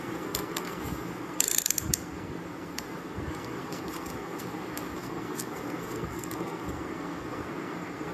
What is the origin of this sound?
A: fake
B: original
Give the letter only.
A